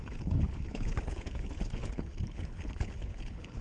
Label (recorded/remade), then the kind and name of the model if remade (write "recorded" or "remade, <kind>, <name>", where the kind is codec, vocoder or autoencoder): remade, codec, HILCodec